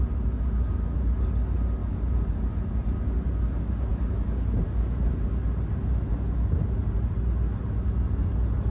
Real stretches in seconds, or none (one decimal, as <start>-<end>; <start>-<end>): 0.0-1.8; 2.5-8.7